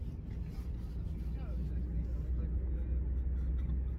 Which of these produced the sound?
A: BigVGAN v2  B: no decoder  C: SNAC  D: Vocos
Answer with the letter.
B